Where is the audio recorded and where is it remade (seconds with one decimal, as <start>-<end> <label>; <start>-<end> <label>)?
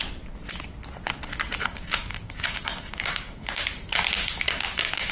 0.0-1.6 recorded; 1.6-3.6 remade; 3.6-4.2 recorded; 4.2-5.1 remade